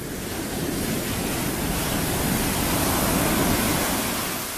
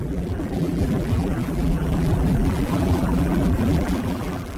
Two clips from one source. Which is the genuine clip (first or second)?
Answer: first